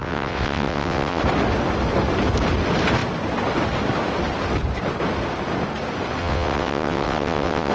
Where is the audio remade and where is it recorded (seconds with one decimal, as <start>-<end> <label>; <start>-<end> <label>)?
0.0-1.2 remade; 1.2-6.2 recorded; 6.2-7.7 remade